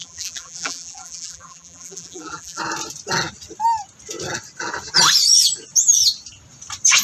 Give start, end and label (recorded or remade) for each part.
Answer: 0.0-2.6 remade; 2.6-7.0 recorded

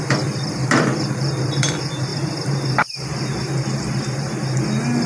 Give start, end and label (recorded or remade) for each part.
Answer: 0.0-2.1 remade; 2.1-5.1 recorded

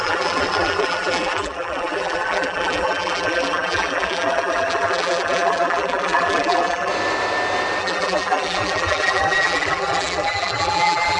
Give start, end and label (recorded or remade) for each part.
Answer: 0.0-6.9 remade; 6.9-7.8 recorded; 7.8-11.2 remade

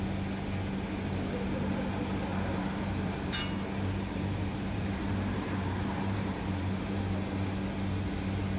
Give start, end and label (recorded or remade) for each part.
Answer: 0.0-2.3 recorded; 2.3-7.0 remade; 7.0-8.6 recorded

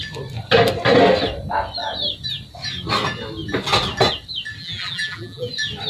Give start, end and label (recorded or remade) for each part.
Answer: 0.0-4.6 recorded; 4.6-5.5 remade; 5.5-5.9 recorded

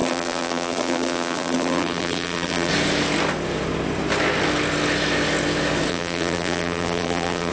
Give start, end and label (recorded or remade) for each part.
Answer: 0.0-2.7 remade; 2.7-5.9 recorded; 5.9-7.5 remade